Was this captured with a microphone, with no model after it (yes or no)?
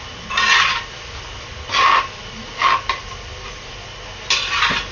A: yes